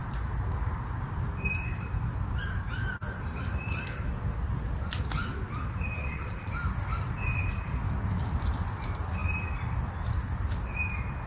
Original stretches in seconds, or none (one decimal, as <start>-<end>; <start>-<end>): 0.0-6.0; 6.5-11.3